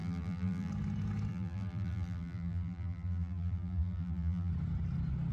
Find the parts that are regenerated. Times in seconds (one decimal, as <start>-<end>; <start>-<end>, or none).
0.0-0.7; 1.3-4.5